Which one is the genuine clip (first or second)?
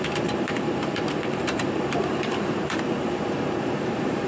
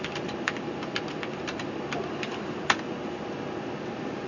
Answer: second